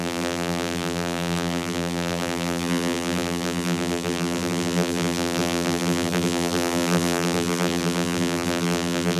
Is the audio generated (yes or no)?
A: yes